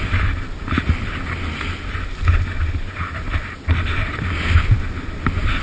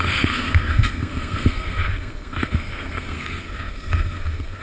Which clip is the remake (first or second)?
second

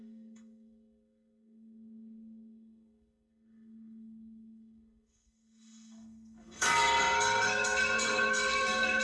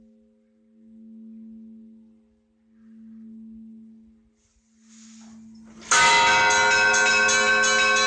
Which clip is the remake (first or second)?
first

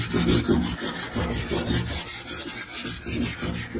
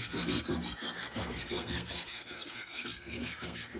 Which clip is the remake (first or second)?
second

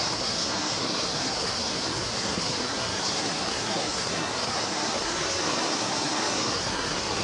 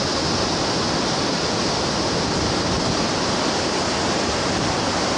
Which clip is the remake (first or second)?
first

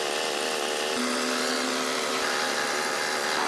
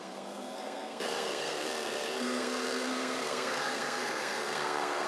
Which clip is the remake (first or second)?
second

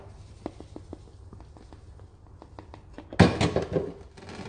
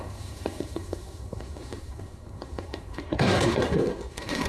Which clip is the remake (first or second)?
second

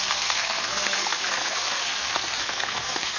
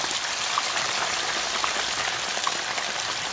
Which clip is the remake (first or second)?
first